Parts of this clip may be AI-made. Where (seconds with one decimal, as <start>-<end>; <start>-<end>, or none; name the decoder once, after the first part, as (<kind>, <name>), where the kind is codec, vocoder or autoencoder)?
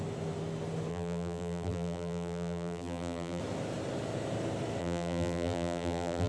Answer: 0.9-3.4 (vocoder, BigVGAN v2); 4.8-6.3